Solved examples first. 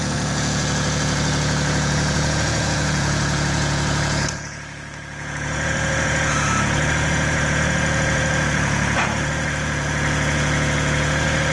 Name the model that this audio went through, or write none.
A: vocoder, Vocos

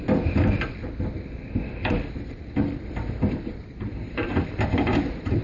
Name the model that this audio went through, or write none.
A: none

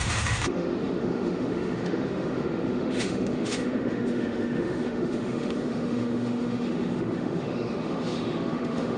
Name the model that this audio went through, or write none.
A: autoencoder, DAC-VAE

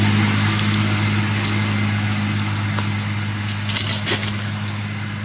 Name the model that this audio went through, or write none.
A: none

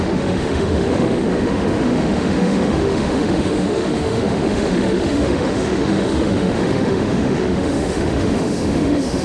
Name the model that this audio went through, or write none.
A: autoencoder, DAC-VAE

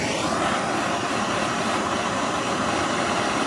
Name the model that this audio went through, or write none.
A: vocoder, BigVGAN v2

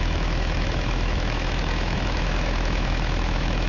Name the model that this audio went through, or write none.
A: autoencoder, DAC-VAE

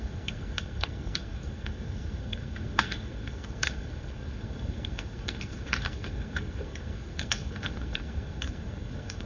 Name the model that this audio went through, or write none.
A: codec, SNAC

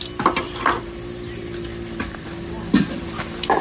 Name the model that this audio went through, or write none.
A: none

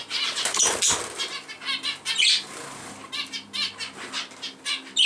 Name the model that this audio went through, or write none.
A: none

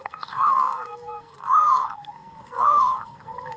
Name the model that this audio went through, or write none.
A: codec, SNAC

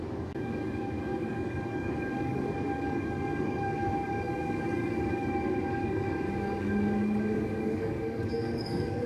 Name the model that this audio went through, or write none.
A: codec, DAC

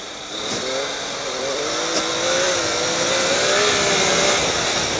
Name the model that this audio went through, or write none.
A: none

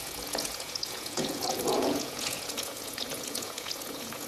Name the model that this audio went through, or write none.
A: vocoder, Vocos